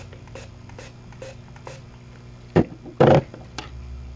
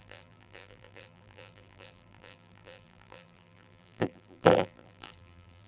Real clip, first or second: first